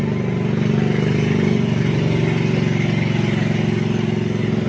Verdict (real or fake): real